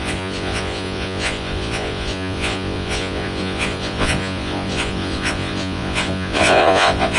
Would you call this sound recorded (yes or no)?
no